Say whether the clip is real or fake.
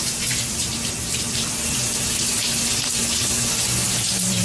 fake